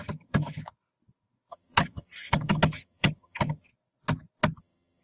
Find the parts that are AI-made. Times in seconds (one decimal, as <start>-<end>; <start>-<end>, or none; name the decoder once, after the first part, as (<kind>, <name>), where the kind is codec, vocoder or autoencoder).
0.0-0.6 (vocoder, HiFi-GAN); 1.5-3.7; 4.6-5.0